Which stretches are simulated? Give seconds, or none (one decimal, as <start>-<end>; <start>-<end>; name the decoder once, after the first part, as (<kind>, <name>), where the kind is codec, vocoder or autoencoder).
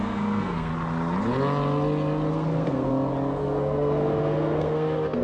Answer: 0.0-0.7 (codec, SNAC); 2.3-2.9; 3.4-5.2